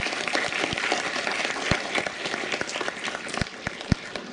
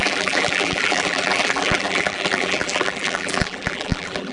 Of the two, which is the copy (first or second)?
second